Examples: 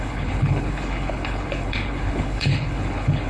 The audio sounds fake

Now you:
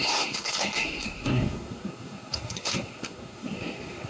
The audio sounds fake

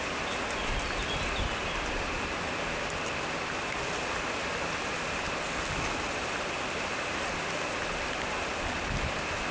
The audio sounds real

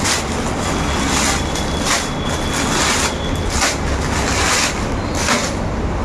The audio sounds real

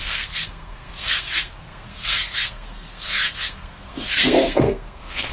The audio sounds fake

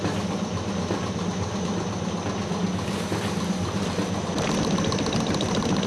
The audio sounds real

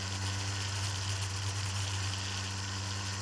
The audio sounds real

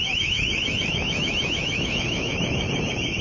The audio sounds fake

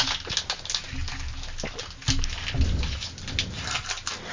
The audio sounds real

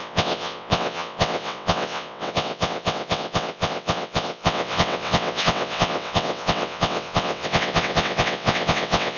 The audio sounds fake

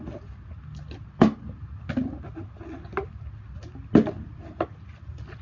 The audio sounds real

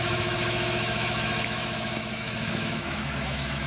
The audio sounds fake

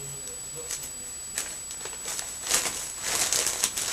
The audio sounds real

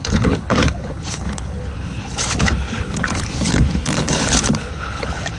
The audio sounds fake